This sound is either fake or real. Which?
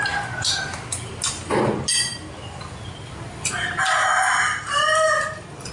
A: real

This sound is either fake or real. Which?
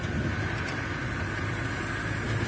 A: real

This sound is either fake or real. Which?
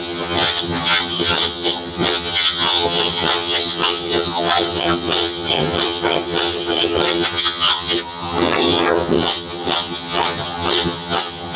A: fake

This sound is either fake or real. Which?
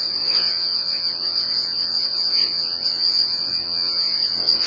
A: fake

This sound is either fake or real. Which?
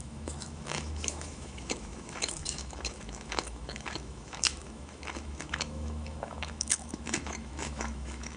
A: fake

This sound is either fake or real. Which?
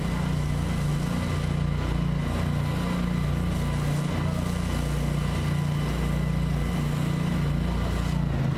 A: real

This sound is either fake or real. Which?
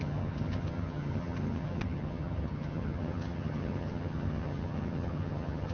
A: fake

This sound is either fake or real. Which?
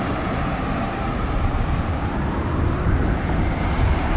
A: fake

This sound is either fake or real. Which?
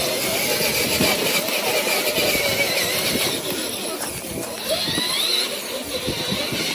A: real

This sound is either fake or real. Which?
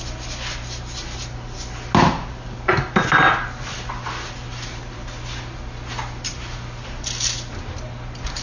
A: real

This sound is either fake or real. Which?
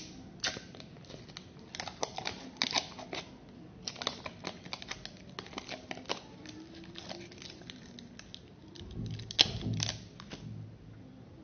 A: real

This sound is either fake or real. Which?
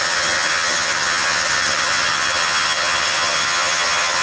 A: fake